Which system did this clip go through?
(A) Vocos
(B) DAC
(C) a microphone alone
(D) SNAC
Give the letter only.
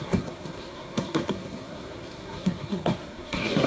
D